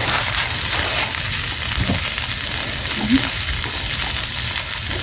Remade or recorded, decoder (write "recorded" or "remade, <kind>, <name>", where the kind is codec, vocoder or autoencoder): recorded